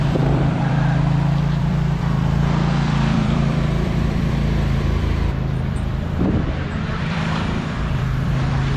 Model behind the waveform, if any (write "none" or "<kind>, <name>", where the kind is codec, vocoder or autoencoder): vocoder, BigVGAN v2